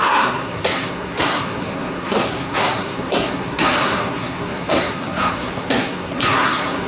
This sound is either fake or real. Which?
fake